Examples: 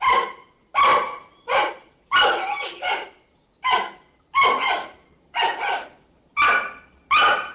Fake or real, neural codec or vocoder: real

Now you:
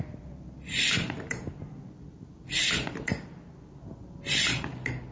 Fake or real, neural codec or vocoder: fake, vocoder, BigVGAN v2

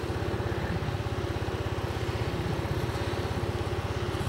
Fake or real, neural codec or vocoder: real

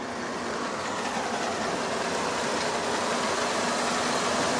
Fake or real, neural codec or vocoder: real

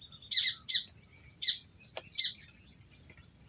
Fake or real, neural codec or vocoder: real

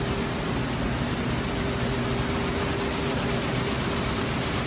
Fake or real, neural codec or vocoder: real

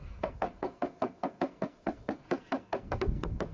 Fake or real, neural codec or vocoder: fake, codec, SNAC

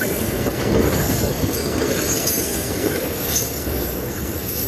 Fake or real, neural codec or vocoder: fake, codec, SNAC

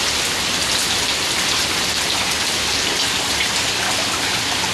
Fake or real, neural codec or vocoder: real